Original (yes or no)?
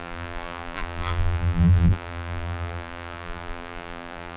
no